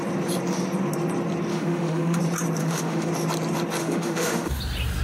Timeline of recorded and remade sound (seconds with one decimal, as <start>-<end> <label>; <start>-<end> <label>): 0.0-1.5 recorded; 1.5-2.2 remade; 2.2-2.6 recorded; 2.6-3.1 remade; 3.1-3.8 recorded; 3.8-4.6 remade; 4.6-5.0 recorded